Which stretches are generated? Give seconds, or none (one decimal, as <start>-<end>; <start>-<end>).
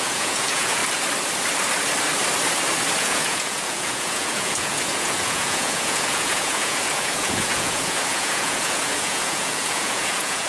0.0-0.8; 3.0-10.5